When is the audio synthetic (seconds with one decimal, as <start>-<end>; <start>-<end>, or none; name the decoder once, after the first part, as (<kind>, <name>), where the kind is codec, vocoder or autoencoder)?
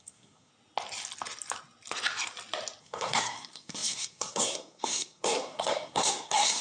0.0-0.5 (codec, SNAC); 2.8-6.6